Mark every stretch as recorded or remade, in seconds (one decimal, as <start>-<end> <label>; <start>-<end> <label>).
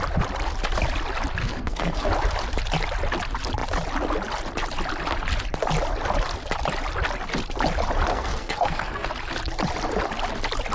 0.0-1.4 recorded; 1.4-2.1 remade; 2.1-8.1 recorded; 8.1-9.1 remade; 9.1-10.7 recorded